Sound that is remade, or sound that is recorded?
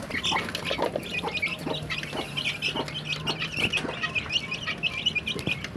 recorded